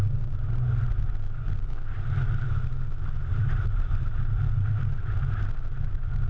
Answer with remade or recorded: recorded